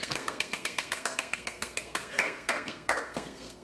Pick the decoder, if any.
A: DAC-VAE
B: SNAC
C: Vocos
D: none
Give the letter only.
B